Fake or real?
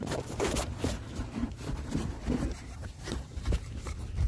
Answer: fake